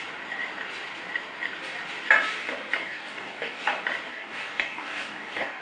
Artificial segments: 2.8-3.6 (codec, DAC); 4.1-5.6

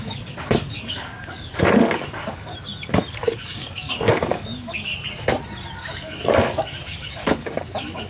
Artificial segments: 0.0-2.5 (codec, DAC); 3.1-4.9; 5.7-8.1

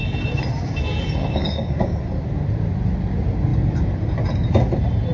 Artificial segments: 1.2-2.0 (codec, DAC)

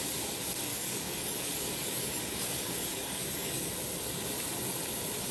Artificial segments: 0.7-3.7 (codec, DAC)

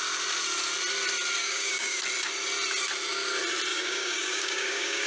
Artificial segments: 1.4-2.0 (codec, DAC); 3.7-5.1

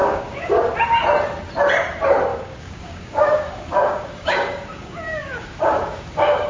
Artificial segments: 0.0-0.5 (codec, DAC); 2.3-6.5